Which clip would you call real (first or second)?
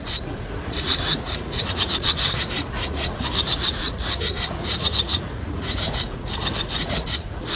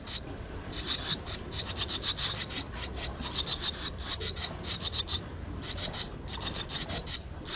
second